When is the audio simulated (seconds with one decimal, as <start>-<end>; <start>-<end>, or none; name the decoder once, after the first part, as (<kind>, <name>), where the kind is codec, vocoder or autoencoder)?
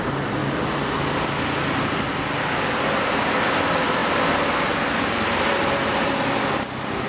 none